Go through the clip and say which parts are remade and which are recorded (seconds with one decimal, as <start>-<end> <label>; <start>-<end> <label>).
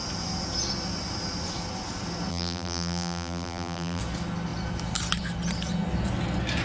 0.0-2.3 recorded; 2.3-4.0 remade; 4.0-6.6 recorded